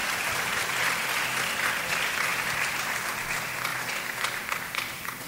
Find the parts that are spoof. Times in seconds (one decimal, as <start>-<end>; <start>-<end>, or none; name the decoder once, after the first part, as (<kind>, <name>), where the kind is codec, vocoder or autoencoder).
0.5-3.7 (vocoder, BigVGAN v2); 4.7-5.3